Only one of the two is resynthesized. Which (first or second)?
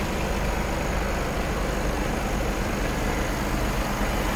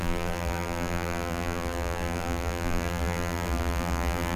second